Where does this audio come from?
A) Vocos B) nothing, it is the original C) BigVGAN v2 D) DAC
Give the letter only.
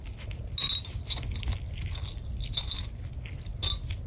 B